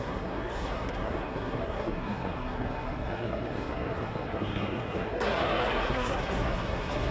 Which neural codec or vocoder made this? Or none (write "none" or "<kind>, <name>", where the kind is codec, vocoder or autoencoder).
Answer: codec, SNAC